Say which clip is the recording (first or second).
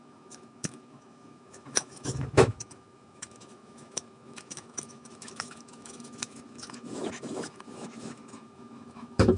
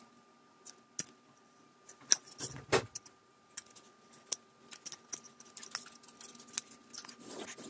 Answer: second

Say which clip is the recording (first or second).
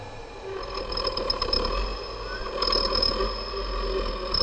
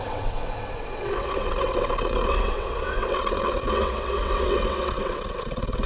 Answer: first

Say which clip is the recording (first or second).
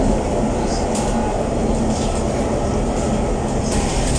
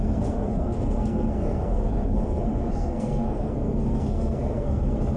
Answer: first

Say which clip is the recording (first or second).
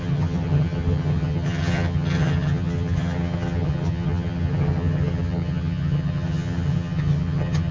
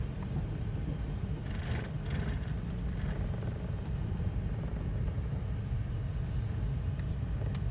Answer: second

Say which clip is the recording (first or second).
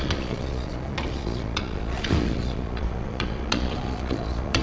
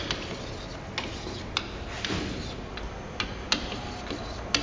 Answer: second